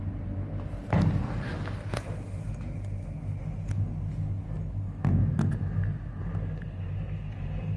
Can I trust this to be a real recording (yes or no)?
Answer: yes